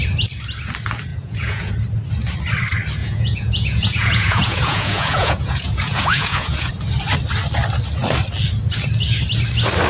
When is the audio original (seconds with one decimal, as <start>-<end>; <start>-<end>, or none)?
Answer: 0.0-1.1; 1.7-3.0; 6.7-9.9